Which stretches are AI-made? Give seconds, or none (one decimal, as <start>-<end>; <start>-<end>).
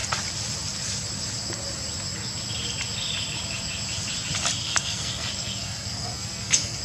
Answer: 4.6-6.8